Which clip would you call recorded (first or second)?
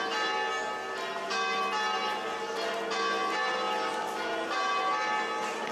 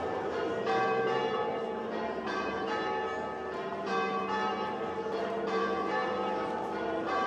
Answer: first